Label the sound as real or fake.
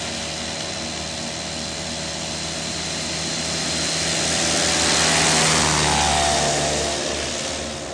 real